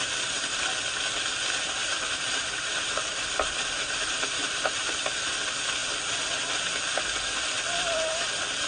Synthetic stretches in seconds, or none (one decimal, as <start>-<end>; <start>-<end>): 1.8-4.9